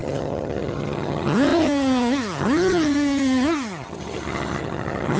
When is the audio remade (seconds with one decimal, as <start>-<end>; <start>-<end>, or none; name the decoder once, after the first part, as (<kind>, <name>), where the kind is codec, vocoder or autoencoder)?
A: 0.0-5.2 (vocoder, HiFi-GAN)